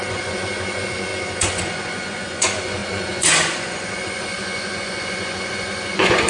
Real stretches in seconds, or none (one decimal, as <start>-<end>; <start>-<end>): none